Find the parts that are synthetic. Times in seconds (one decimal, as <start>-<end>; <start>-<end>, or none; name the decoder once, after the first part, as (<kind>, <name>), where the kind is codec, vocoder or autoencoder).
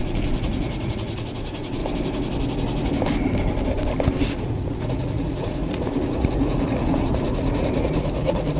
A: 0.0-1.8 (vocoder, Vocos); 4.2-8.6